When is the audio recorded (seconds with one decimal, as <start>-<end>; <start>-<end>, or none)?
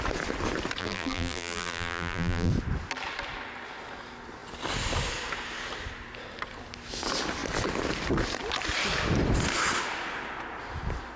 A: 0.0-0.8; 2.5-11.2